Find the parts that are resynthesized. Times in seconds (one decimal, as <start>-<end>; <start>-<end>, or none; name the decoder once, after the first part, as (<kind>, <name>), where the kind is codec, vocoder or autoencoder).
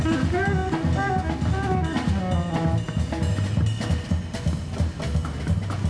none